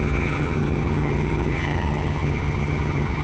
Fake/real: fake